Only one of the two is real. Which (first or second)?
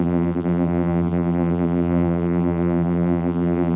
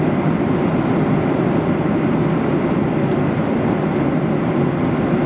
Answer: second